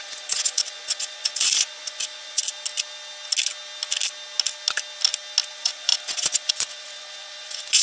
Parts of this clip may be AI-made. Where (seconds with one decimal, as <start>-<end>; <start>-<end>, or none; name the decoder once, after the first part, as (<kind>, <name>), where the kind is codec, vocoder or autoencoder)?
0.0-2.4 (vocoder, Vocos); 5.5-7.8